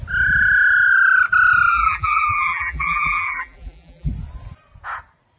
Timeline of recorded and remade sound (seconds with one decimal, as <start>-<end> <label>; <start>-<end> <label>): 0.0-1.7 recorded; 1.7-4.1 remade; 4.1-5.4 recorded